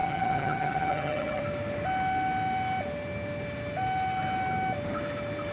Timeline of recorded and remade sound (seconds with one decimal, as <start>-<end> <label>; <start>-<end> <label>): 0.0-1.4 remade; 1.4-5.5 recorded